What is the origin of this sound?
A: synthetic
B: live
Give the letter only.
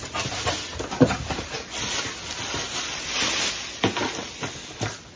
B